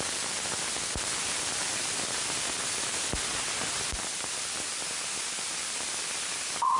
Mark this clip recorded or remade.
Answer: recorded